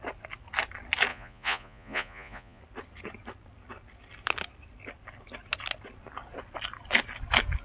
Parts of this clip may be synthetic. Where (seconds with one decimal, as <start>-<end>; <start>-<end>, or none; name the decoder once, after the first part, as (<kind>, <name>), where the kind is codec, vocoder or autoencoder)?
1.1-2.6 (vocoder, Vocos)